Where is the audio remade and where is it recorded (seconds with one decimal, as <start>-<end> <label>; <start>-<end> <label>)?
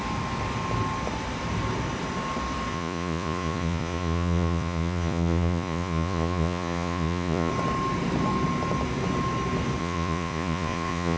0.0-2.7 recorded; 2.7-7.5 remade; 7.5-9.8 recorded; 9.8-11.2 remade